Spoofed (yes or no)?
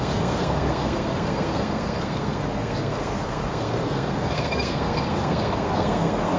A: yes